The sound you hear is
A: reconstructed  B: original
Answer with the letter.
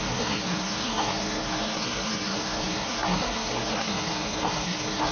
A